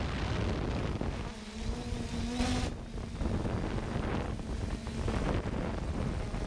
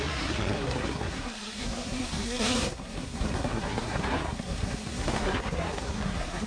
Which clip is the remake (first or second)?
second